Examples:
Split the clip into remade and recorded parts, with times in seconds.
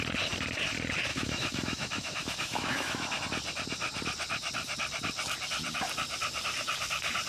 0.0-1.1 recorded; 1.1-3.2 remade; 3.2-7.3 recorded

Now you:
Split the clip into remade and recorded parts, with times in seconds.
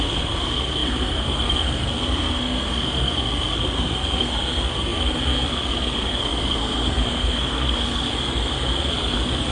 0.0-9.5 remade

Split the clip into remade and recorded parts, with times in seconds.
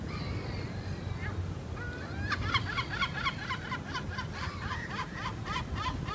0.0-4.4 recorded; 4.4-5.2 remade; 5.2-6.1 recorded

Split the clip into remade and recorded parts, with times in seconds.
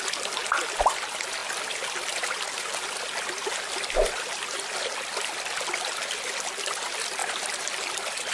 0.0-7.2 recorded; 7.2-7.9 remade; 7.9-8.3 recorded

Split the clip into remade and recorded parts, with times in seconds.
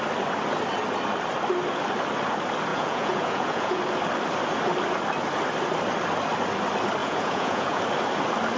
0.0-2.7 recorded; 2.7-3.8 remade; 3.8-7.0 recorded; 7.0-7.8 remade; 7.8-8.6 recorded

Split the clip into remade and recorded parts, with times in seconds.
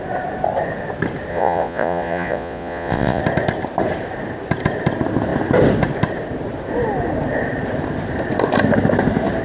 0.0-1.3 recorded; 1.3-3.2 remade; 3.2-9.4 recorded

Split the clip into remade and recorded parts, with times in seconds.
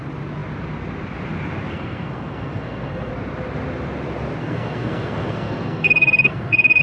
0.0-1.7 recorded; 1.7-3.1 remade; 3.1-4.4 recorded; 4.4-6.8 remade